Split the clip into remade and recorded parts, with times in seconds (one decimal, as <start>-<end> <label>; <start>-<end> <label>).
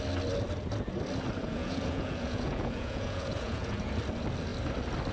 0.0-1.4 recorded; 1.4-3.9 remade; 3.9-5.1 recorded